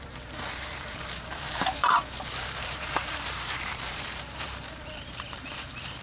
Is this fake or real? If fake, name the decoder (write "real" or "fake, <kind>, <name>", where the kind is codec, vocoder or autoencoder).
fake, vocoder, BigVGAN v2